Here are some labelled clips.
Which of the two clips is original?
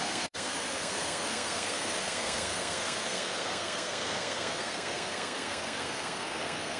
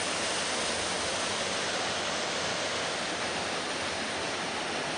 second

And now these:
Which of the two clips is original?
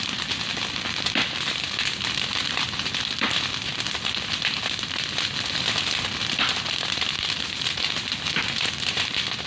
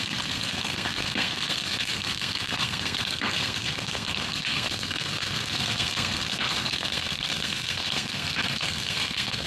first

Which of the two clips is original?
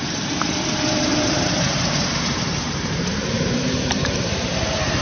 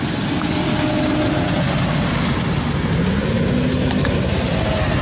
second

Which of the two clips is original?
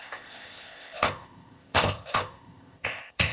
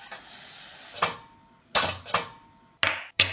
second